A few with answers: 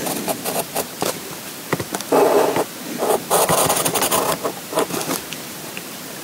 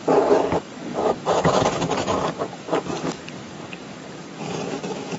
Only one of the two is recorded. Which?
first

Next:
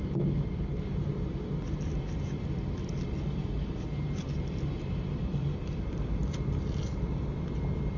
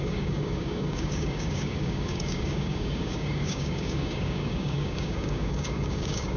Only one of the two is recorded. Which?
first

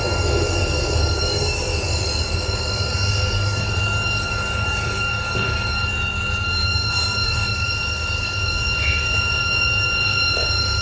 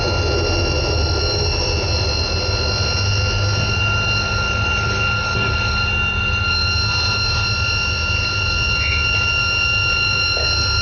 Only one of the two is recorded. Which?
second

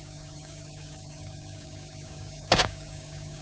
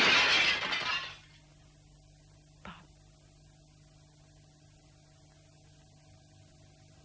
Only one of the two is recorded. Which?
second